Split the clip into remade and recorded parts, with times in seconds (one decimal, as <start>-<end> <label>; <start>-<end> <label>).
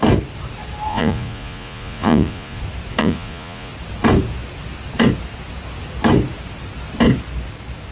0.0-0.9 recorded; 0.9-2.6 remade; 2.6-3.0 recorded; 3.0-3.7 remade; 3.7-7.9 recorded